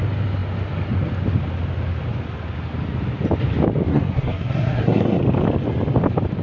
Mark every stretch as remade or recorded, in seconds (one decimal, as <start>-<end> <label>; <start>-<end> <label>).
0.0-3.9 recorded; 3.9-5.2 remade; 5.2-6.4 recorded